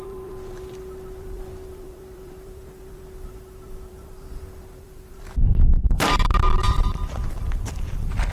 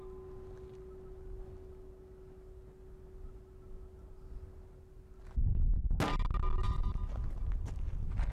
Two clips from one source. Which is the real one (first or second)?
second